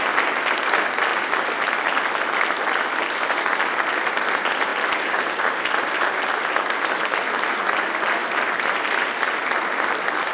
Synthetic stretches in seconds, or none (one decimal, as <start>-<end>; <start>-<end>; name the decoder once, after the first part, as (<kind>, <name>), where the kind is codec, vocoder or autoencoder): none